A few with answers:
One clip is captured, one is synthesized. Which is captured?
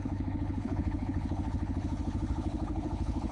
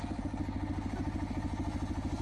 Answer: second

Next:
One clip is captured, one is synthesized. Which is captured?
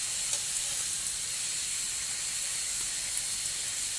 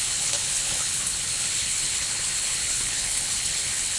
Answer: first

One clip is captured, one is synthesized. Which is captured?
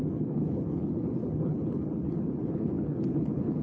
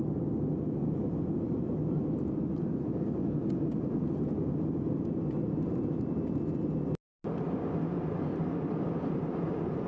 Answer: second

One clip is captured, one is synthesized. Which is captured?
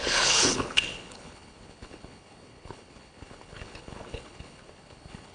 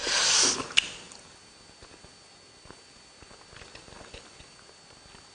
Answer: second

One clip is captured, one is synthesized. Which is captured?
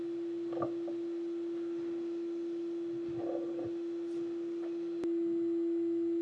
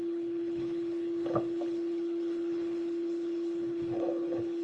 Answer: first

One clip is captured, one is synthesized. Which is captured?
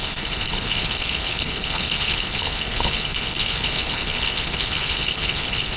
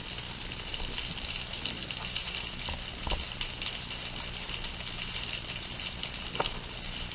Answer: second